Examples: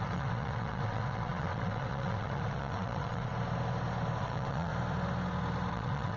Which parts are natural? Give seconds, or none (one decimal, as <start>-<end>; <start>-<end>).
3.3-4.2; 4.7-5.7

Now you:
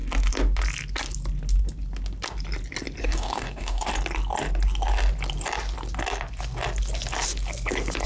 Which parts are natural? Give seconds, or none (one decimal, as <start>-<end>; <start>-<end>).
0.0-3.0; 3.9-8.1

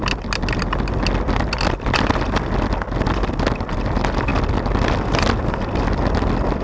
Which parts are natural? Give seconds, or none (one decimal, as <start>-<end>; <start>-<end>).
0.0-6.6

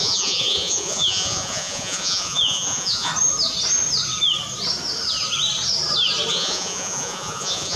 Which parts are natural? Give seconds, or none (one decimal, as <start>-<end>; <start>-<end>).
3.1-6.3

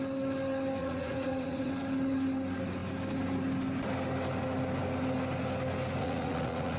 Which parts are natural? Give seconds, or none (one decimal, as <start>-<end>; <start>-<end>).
0.0-0.8; 1.7-6.0

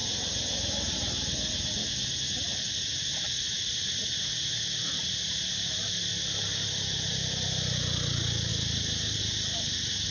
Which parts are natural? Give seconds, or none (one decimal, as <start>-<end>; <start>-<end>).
0.0-10.1

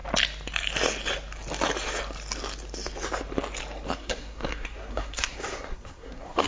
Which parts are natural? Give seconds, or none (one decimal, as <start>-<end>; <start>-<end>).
0.0-3.9